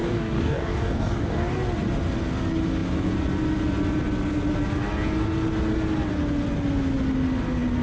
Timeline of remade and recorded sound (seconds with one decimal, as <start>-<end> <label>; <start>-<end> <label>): 0.0-1.5 remade; 1.5-7.8 recorded